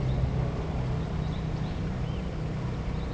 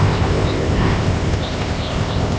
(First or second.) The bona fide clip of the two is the first